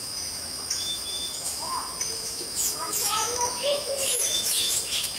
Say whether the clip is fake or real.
fake